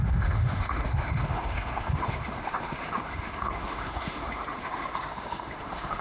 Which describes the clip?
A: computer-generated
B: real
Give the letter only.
A